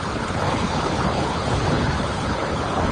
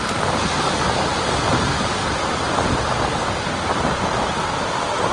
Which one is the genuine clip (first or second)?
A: second